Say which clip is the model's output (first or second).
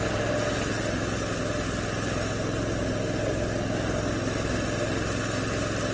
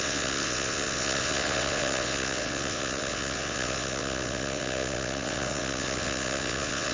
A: second